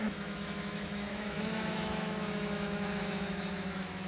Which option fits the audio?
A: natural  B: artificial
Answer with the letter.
B